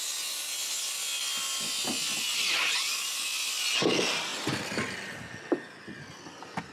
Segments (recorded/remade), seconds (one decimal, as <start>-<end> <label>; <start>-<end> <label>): 0.0-6.7 recorded